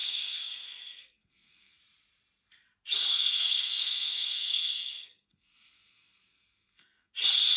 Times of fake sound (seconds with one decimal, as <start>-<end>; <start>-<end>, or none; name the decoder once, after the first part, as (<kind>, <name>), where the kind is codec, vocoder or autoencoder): 0.0-1.8 (codec, SNAC); 3.1-7.1